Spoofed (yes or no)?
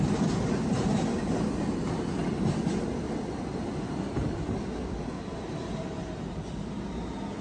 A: no